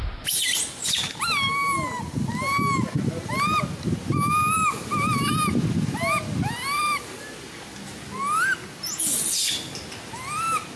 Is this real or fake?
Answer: real